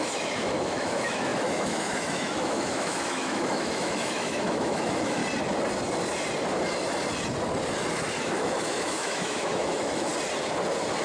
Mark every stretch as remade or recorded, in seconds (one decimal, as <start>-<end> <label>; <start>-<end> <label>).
0.0-5.2 remade; 5.2-8.2 recorded; 8.2-10.1 remade; 10.1-11.0 recorded